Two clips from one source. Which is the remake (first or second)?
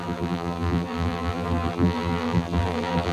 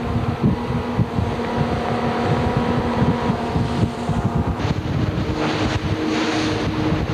first